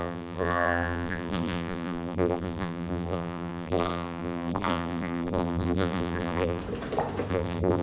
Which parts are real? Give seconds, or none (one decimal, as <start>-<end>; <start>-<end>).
6.6-7.3